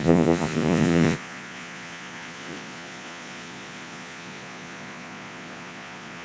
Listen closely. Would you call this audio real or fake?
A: fake